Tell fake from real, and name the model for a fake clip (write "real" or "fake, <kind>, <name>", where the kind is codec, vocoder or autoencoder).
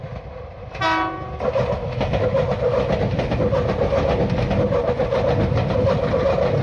real